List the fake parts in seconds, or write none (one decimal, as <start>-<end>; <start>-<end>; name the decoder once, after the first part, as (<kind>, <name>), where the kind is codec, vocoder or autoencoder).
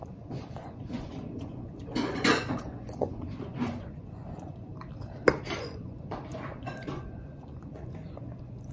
0.0-4.7 (vocoder, Vocos); 5.6-8.7